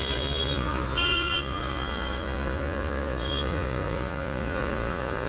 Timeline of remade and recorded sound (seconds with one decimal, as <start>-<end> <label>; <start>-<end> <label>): 0.0-5.3 remade

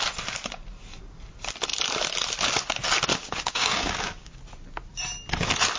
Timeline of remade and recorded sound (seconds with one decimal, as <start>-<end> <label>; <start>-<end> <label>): 0.0-3.1 recorded; 3.1-4.4 remade; 4.4-5.8 recorded

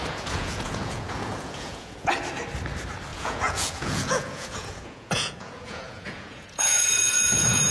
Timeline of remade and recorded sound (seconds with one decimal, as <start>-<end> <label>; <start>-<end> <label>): 0.0-2.1 remade; 2.1-3.1 recorded; 3.1-7.7 remade

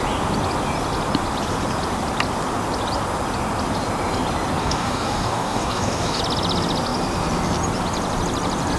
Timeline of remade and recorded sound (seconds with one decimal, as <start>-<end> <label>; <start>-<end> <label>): 0.0-4.6 recorded; 4.6-6.2 remade; 6.2-8.8 recorded

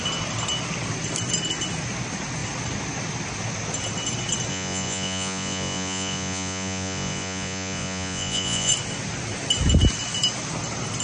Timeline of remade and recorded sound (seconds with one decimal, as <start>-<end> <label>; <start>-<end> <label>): 0.0-4.5 recorded; 4.5-8.7 remade; 8.7-11.0 recorded

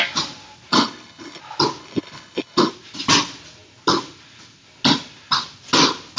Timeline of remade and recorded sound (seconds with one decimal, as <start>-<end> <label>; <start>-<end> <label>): 0.0-0.7 recorded; 0.7-1.4 remade; 1.4-1.8 recorded; 1.8-2.7 remade; 2.7-6.2 recorded

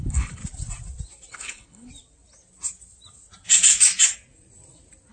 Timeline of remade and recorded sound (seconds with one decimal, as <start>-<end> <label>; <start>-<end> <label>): 0.0-0.4 remade; 0.4-1.3 recorded; 1.3-1.9 remade; 1.9-5.1 recorded